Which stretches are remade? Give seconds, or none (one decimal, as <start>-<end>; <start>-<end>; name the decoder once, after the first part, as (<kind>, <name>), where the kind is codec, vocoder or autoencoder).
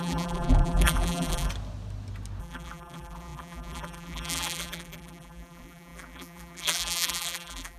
0.0-1.5 (vocoder, BigVGAN v2); 2.4-7.8